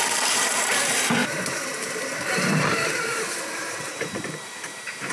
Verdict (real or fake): fake